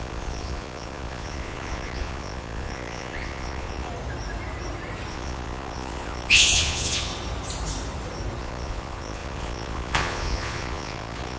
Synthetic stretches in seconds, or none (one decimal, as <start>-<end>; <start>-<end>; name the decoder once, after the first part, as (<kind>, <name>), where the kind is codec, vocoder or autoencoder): 0.0-3.9 (vocoder, Vocos); 5.1-7.1; 8.4-11.4